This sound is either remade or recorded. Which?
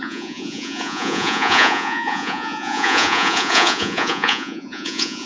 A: remade